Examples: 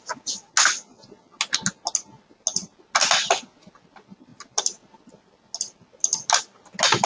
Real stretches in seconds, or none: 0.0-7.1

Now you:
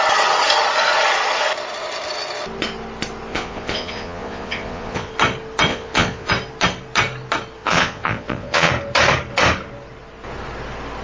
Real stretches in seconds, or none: 0.0-3.3; 5.1-5.7; 6.3-7.6; 8.7-11.0

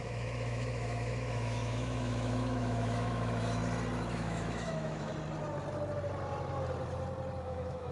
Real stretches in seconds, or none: 3.6-4.1; 5.1-7.4

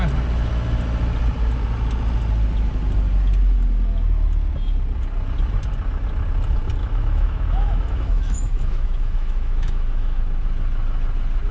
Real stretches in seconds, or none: 0.0-6.8; 10.2-11.5

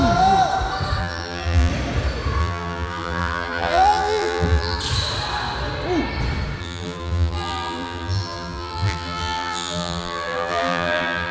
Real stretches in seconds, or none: 0.0-1.0; 1.7-2.4; 4.8-6.6